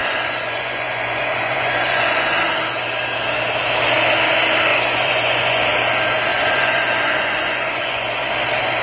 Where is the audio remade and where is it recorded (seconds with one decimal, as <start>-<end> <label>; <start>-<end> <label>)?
0.0-2.3 remade; 2.3-4.7 recorded; 4.7-5.6 remade; 5.6-6.3 recorded; 6.3-8.3 remade; 8.3-8.8 recorded